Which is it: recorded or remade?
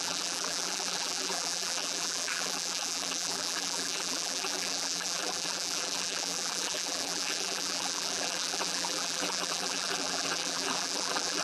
remade